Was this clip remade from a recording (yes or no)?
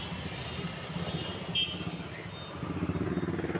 no